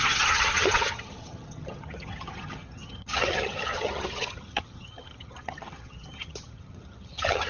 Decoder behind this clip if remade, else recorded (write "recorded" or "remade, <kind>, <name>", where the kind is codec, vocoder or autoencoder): remade, vocoder, HiFi-GAN